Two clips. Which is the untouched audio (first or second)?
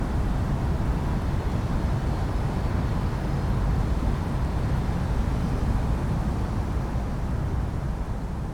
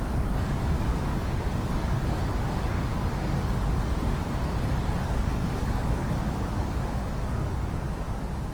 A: first